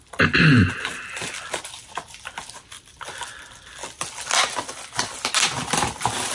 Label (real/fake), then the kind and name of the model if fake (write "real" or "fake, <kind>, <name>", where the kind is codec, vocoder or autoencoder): real